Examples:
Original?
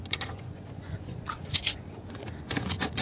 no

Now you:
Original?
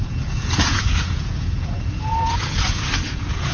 no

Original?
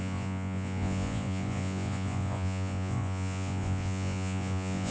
no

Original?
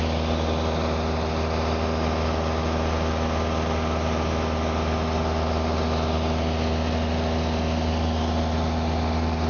yes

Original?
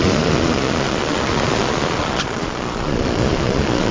no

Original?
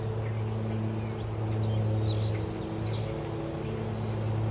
yes